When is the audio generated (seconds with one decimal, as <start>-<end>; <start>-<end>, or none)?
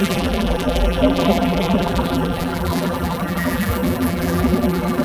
0.0-5.0